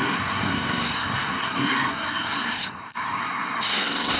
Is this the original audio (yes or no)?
no